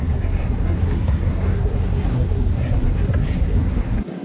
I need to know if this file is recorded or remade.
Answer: remade